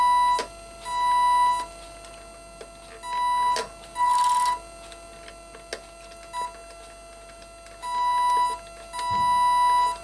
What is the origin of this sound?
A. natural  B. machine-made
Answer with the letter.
A